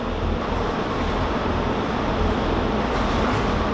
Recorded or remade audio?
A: recorded